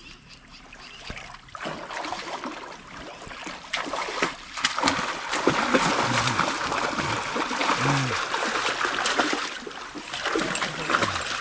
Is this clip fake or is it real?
real